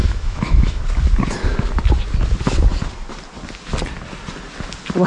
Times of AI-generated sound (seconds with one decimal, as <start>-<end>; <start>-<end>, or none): 0.0-0.8